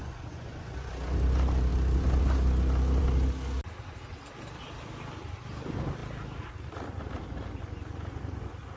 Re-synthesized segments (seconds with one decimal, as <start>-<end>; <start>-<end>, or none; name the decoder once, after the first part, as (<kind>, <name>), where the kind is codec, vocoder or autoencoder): 0.0-0.9 (vocoder, Vocos)